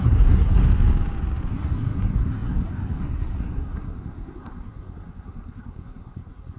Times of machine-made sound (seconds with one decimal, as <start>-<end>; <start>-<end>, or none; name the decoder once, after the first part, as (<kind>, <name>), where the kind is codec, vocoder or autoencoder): 0.0-0.6 (codec, SNAC); 1.5-6.6